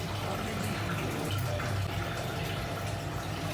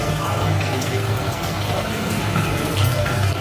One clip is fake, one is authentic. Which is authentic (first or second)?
first